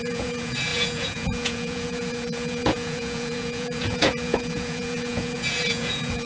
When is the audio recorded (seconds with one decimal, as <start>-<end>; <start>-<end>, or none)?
none